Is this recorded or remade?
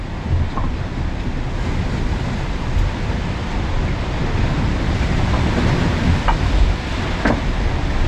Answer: recorded